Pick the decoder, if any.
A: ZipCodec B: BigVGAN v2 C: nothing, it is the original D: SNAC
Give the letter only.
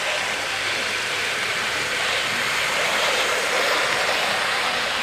B